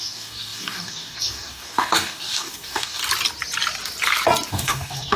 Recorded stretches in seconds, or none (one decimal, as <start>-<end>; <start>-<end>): 3.0-4.5